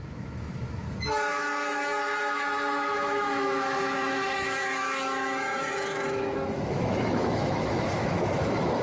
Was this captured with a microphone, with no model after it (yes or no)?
no